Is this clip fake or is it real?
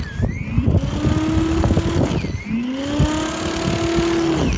real